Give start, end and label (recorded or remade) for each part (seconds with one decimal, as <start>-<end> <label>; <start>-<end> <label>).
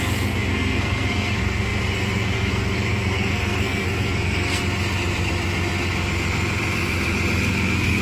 0.0-4.6 remade; 4.6-7.5 recorded; 7.5-8.0 remade